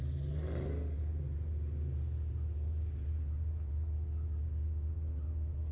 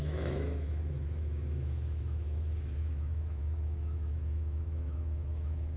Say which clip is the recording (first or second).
first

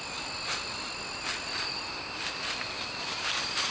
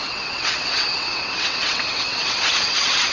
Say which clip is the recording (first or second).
first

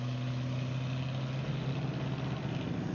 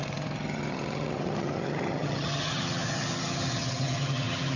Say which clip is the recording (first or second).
first